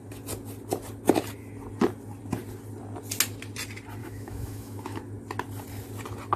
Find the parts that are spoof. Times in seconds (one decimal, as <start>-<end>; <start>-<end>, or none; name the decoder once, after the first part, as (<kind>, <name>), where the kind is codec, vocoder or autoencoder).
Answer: 4.0-5.0 (autoencoder, DAC-VAE)